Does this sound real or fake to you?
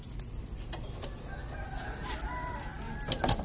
real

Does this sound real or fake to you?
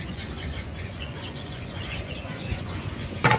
fake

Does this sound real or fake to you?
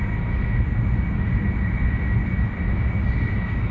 real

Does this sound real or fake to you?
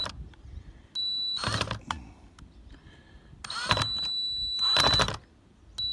real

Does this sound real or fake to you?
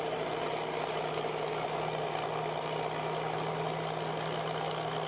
real